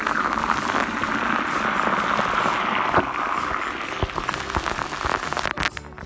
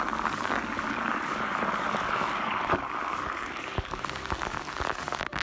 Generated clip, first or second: second